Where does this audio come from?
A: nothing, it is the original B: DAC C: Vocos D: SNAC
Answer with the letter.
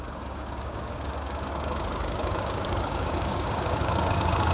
B